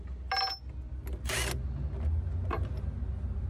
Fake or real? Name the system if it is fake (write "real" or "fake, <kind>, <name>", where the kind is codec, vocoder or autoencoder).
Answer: real